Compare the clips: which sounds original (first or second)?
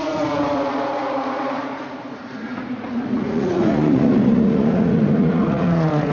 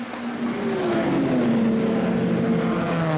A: second